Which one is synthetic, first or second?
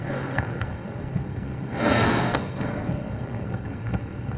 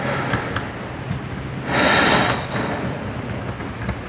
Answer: first